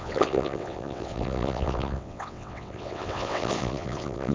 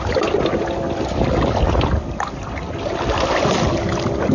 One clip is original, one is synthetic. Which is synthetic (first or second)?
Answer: first